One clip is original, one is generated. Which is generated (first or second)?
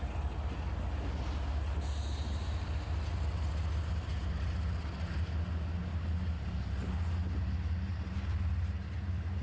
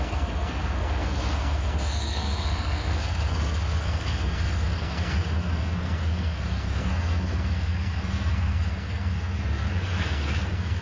second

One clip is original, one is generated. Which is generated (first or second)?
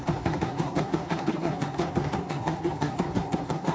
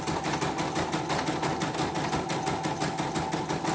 first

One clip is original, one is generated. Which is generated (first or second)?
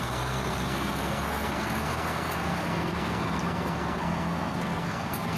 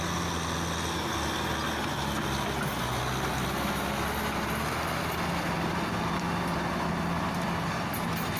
first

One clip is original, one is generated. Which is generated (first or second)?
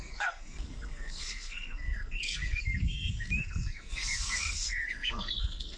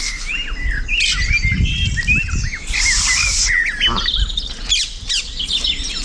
first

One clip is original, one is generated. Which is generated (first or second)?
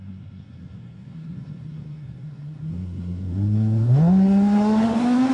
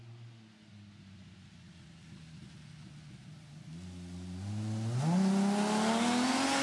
first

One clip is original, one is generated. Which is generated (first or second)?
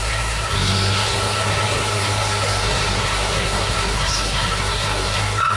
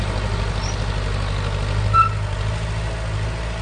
first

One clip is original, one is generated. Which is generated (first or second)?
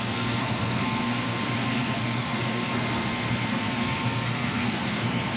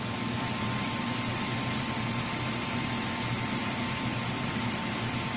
first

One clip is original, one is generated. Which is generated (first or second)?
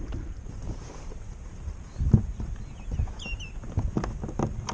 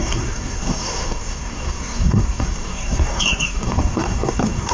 second